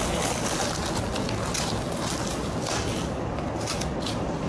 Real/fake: real